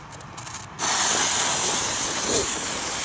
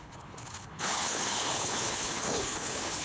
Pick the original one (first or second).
first